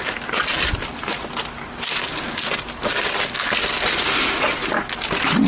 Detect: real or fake real